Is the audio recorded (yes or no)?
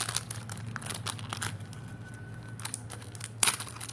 yes